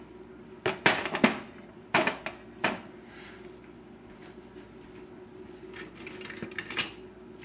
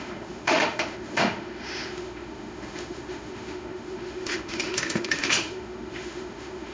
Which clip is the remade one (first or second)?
second